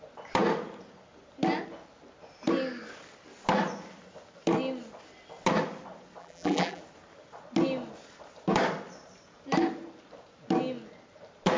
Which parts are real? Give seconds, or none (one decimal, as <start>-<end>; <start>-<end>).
0.0-6.2; 6.8-11.6